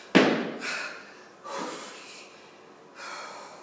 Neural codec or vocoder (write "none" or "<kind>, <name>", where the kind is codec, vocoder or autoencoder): none